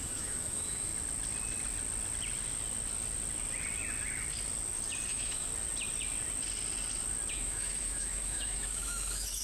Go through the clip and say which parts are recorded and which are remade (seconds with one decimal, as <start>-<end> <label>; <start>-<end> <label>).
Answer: 0.0-0.9 remade; 0.9-5.1 recorded; 5.1-5.5 remade; 5.5-7.3 recorded; 7.3-9.4 remade